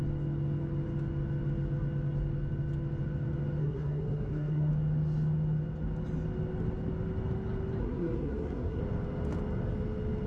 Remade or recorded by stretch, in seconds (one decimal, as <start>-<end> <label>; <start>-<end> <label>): 0.0-3.6 recorded; 3.6-4.7 remade; 4.7-7.8 recorded; 7.8-8.8 remade; 8.8-10.3 recorded